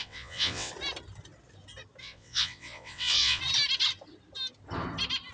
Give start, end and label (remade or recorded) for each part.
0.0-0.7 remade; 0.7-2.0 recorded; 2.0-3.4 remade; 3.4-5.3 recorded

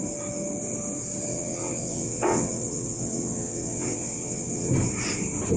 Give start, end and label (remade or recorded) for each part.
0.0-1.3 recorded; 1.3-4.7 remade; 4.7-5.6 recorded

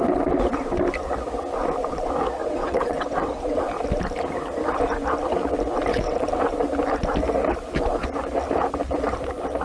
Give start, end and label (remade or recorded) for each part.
0.0-2.4 recorded; 2.4-3.6 remade; 3.6-5.9 recorded; 5.9-6.4 remade; 6.4-9.6 recorded

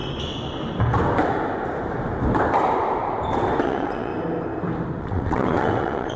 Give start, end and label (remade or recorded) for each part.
0.0-3.6 recorded; 3.6-4.1 remade; 4.1-5.0 recorded; 5.0-6.2 remade

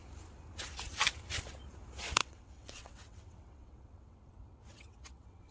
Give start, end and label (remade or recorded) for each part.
0.0-2.2 recorded; 2.2-5.5 remade

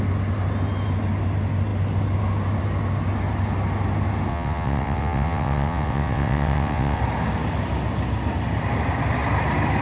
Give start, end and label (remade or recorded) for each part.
0.0-4.3 recorded; 4.3-7.0 remade; 7.0-9.8 recorded

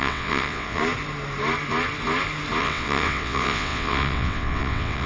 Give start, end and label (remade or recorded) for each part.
0.0-0.8 remade; 0.8-2.6 recorded; 2.6-5.1 remade

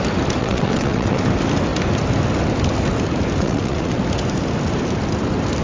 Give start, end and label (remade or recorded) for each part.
0.0-0.4 recorded; 0.4-1.2 remade; 1.2-3.4 recorded; 3.4-4.0 remade; 4.0-5.6 recorded